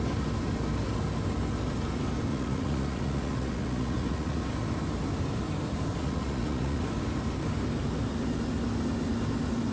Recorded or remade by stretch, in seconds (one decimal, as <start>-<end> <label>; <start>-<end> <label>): 0.0-2.3 recorded; 2.3-4.4 remade; 4.4-6.0 recorded; 6.0-6.8 remade; 6.8-9.7 recorded